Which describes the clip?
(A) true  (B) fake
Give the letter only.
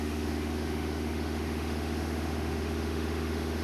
B